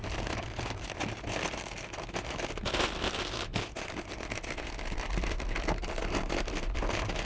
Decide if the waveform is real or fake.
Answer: real